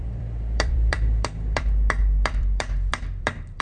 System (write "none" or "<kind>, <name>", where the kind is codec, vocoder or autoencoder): vocoder, BigVGAN v2